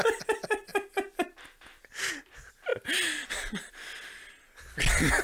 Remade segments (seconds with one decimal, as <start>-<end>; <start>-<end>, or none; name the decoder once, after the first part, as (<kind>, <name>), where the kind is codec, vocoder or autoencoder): none